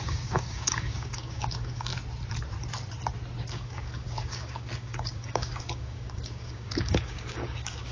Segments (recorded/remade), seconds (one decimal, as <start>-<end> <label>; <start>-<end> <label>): 0.0-1.9 remade; 1.9-3.5 recorded; 3.5-7.9 remade